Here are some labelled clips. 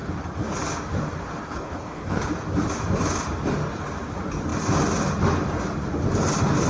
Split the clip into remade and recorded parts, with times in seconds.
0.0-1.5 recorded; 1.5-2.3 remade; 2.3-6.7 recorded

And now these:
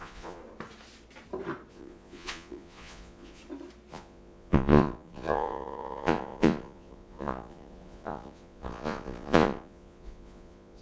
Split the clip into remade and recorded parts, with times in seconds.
0.0-0.4 remade; 0.4-1.7 recorded; 1.7-3.4 remade; 3.4-3.9 recorded; 3.9-10.8 remade

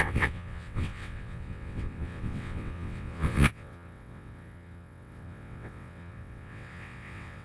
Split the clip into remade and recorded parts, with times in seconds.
0.0-7.4 remade

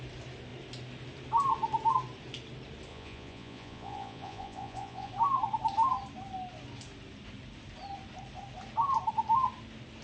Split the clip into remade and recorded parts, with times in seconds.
0.0-2.9 recorded; 2.9-5.1 remade; 5.1-10.0 recorded

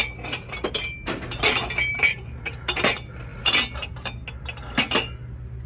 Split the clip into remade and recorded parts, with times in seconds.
0.0-1.9 recorded; 1.9-2.5 remade; 2.5-5.7 recorded

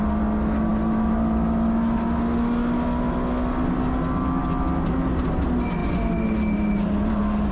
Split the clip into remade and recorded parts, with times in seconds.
0.0-7.5 recorded